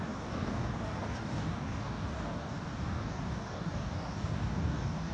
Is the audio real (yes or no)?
no